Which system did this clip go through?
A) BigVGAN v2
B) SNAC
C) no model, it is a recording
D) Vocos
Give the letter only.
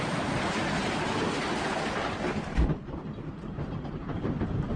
A